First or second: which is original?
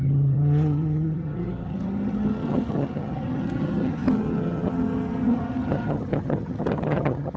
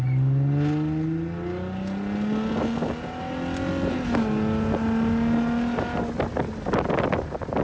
second